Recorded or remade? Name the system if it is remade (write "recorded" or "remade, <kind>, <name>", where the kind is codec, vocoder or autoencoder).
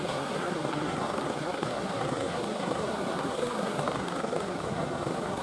remade, codec, SNAC